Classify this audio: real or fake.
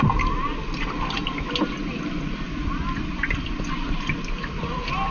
real